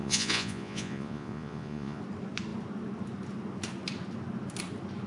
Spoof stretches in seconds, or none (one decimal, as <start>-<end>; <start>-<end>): 0.0-2.0